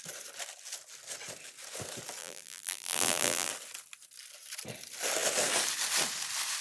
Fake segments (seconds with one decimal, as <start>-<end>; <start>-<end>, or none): 2.2-3.5